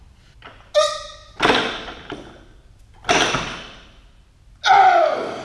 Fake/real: real